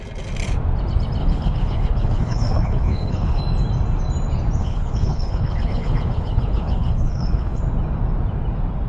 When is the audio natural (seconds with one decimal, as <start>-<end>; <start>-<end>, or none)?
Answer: 0.0-1.2; 3.4-4.6; 7.6-8.9